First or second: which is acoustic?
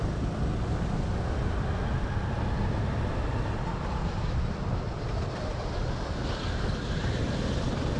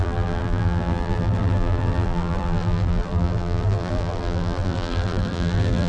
first